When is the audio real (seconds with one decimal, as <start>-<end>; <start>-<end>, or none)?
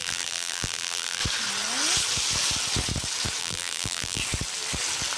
1.2-3.4; 4.2-5.2